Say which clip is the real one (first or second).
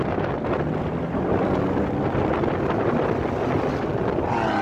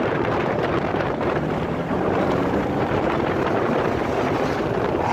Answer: first